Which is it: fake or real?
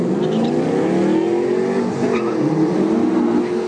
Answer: real